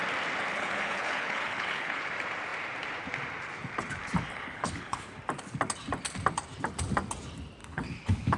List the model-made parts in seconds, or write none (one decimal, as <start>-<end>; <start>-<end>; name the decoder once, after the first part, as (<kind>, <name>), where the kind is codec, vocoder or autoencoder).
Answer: 0.5-2.1 (codec, HILCodec); 4.3-5.2; 7.6-8.4